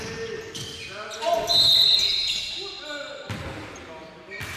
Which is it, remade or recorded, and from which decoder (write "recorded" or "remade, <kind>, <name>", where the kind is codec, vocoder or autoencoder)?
recorded